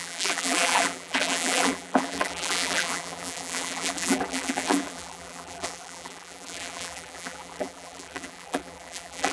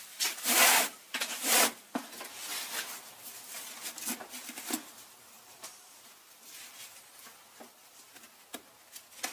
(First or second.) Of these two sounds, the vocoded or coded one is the first